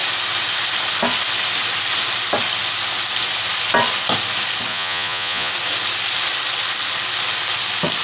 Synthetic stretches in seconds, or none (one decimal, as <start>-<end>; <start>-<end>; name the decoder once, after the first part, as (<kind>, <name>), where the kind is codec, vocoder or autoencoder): 4.7-5.5 (vocoder, Vocos)